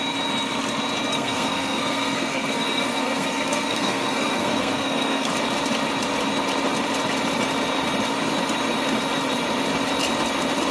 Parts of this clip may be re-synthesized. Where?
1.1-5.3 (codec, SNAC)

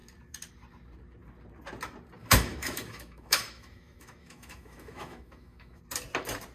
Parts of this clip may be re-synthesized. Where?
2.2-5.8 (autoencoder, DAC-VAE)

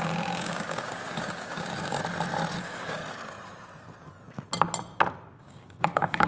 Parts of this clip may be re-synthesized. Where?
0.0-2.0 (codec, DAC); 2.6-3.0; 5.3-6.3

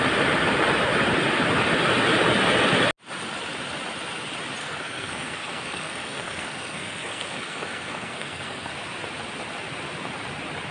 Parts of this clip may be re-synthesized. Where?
4.6-8.7 (codec, SNAC)

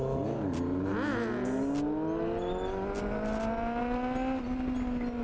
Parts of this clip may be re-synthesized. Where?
none

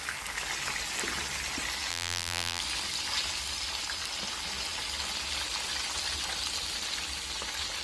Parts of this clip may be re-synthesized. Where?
1.9-2.6 (vocoder, BigVGAN v2)